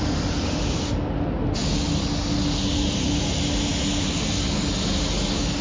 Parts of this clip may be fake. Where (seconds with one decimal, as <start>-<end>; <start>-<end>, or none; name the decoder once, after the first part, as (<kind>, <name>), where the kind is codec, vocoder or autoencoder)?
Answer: none